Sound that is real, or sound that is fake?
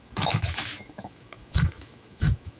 fake